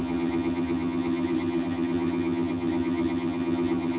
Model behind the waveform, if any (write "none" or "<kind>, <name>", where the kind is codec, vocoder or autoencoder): vocoder, HiFi-GAN